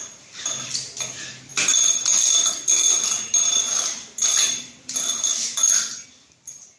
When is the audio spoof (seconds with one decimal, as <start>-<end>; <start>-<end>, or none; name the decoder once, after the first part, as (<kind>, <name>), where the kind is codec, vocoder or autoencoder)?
0.0-1.5 (vocoder, BigVGAN v2); 2.6-5.3; 6.1-6.8